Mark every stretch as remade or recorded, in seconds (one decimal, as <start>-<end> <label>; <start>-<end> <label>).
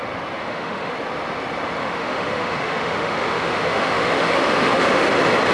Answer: 0.0-0.4 recorded; 0.4-0.9 remade; 0.9-1.8 recorded; 1.8-5.1 remade; 5.1-5.5 recorded